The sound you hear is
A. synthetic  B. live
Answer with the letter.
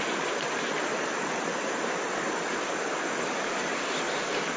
B